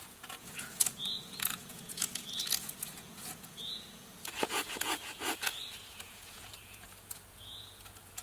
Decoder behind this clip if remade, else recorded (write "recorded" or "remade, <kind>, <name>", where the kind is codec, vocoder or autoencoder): remade, vocoder, Vocos